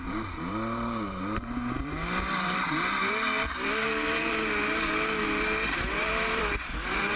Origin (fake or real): fake